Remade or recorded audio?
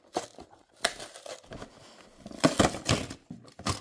recorded